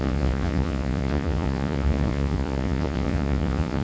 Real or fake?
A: fake